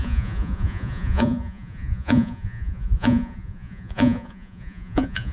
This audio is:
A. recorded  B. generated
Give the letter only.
B